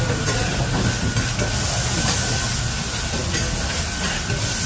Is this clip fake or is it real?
real